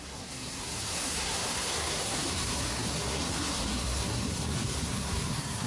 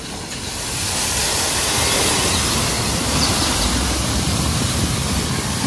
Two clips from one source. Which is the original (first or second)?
second